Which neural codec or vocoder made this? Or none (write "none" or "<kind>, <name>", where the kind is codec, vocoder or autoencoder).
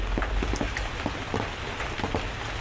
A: none